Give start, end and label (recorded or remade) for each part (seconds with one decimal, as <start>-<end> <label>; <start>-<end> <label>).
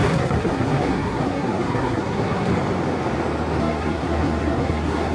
0.0-2.5 remade; 2.5-3.6 recorded; 3.6-5.1 remade